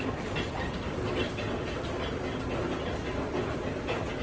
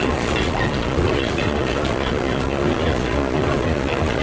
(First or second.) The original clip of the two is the first